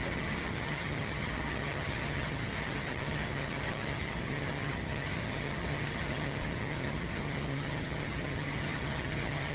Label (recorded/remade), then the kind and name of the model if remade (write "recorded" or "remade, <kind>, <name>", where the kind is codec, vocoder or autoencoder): remade, vocoder, HiFi-GAN